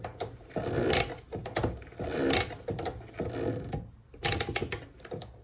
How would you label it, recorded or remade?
recorded